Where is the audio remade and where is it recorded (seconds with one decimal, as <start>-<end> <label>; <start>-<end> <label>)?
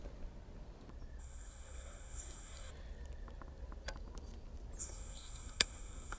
0.0-1.2 recorded; 1.2-2.7 remade; 2.7-4.8 recorded; 4.8-6.2 remade